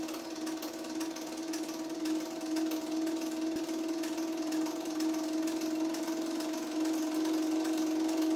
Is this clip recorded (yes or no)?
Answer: yes